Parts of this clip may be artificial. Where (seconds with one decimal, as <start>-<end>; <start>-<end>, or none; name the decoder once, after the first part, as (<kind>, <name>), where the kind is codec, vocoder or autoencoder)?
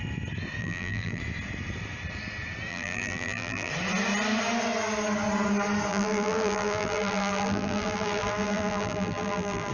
0.6-1.2 (vocoder, BigVGAN v2); 2.7-3.7; 5.9-9.7